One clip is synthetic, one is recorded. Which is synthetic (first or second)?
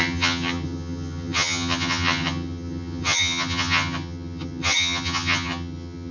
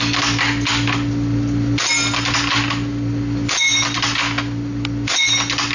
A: first